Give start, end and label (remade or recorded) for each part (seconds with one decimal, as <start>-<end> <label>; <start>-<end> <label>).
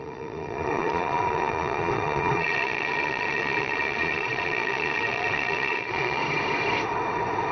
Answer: 0.0-6.2 remade; 6.2-7.5 recorded